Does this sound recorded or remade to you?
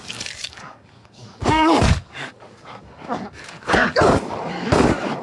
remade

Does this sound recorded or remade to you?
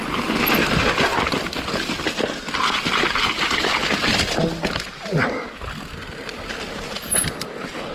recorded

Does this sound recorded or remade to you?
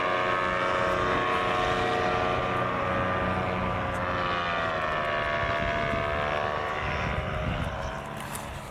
recorded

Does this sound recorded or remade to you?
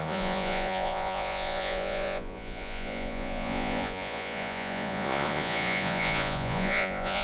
remade